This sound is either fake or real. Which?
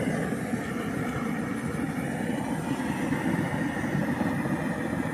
real